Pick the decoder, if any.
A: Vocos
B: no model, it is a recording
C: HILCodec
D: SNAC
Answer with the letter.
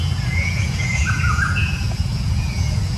A